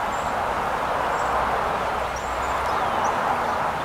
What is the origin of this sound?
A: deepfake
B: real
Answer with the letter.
B